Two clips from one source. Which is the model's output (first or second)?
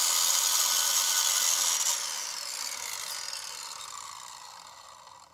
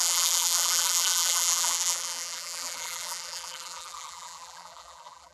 second